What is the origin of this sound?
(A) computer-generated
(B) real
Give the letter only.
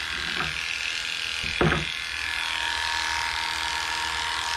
B